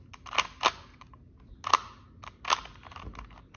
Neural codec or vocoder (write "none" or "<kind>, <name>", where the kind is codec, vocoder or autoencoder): none